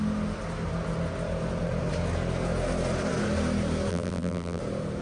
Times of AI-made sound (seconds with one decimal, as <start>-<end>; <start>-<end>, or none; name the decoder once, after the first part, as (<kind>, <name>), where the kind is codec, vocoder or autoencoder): 3.9-4.6 (vocoder, BigVGAN v2)